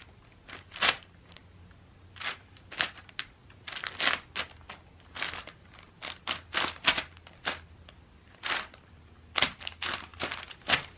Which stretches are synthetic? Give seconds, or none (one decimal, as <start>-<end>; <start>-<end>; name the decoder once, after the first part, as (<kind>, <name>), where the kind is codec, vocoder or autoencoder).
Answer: none